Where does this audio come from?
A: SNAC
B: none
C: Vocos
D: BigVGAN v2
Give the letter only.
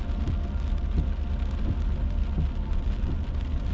B